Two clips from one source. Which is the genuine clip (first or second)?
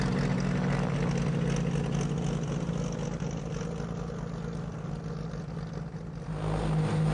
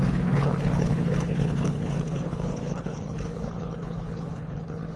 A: first